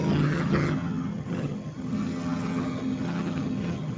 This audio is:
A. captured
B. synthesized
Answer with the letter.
B